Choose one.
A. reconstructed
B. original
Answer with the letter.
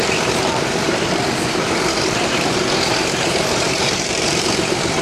A